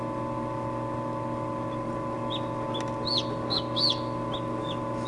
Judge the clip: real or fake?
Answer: real